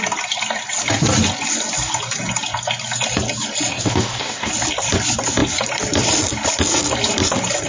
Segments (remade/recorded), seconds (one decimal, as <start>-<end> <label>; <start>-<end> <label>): 0.0-3.7 recorded; 3.7-4.5 remade; 4.5-7.7 recorded